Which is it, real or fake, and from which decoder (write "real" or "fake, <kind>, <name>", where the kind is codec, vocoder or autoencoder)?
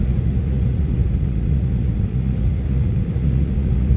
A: fake, vocoder, Vocos